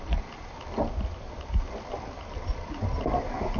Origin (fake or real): real